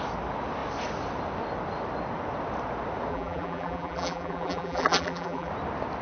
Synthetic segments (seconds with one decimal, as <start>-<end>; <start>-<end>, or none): 3.1-5.5